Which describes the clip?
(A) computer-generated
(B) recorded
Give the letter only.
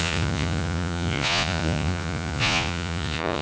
A